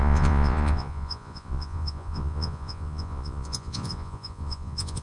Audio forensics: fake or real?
fake